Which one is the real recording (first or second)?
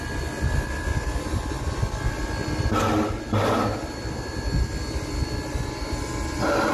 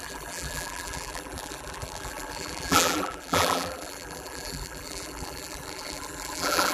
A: first